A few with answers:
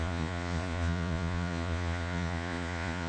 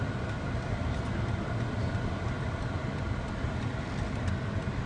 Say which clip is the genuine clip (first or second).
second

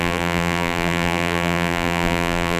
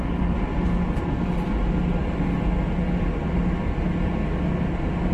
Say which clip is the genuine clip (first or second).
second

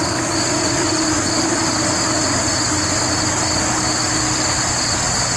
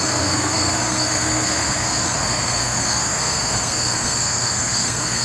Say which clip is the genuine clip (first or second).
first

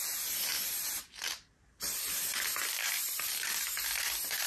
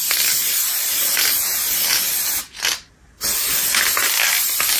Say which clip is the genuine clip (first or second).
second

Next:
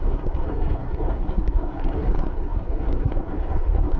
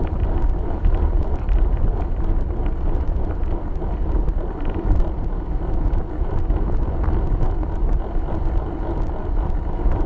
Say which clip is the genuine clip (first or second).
second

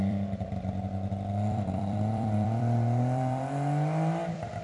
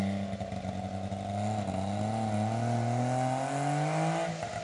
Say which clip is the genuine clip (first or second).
second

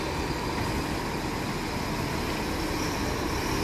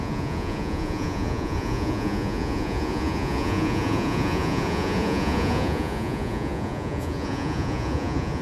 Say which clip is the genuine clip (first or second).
first